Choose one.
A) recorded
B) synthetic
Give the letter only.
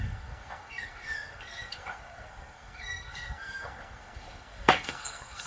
B